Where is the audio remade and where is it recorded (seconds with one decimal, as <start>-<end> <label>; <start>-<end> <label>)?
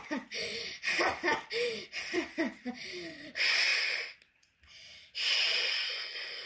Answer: 0.0-0.7 remade; 0.7-3.1 recorded; 3.1-3.7 remade; 3.7-5.7 recorded; 5.7-6.5 remade